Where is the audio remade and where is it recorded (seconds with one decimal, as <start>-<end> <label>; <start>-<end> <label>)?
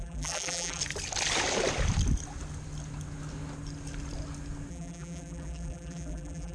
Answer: 0.0-0.8 remade; 0.8-4.7 recorded; 4.7-6.5 remade